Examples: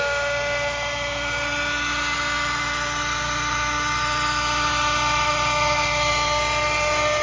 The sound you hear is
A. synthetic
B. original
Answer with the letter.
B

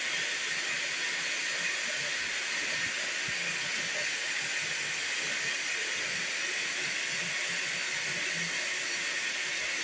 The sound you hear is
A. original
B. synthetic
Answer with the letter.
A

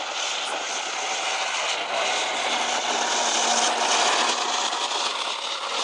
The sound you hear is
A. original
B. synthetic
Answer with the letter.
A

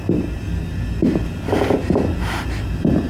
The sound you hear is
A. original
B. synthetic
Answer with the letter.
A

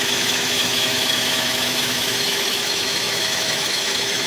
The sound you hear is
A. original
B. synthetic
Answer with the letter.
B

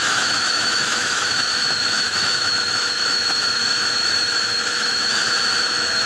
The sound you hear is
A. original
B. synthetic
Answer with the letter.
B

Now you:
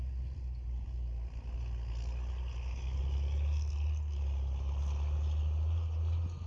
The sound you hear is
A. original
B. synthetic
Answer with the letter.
A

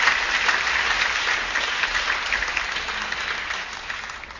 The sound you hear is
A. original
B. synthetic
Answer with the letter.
A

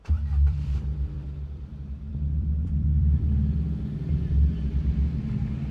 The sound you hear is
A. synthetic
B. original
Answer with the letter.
A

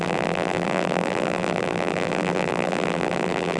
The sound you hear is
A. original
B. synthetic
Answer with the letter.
B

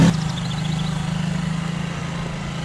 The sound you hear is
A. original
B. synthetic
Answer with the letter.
A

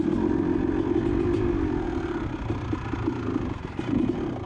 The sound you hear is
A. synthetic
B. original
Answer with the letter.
B